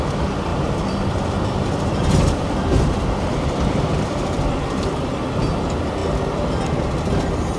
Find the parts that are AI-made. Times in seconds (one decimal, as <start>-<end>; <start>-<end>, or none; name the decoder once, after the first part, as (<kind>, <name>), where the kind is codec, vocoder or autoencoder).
0.5-5.1 (vocoder, BigVGAN v2)